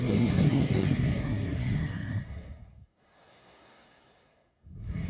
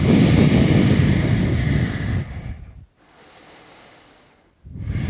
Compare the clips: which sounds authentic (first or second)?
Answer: second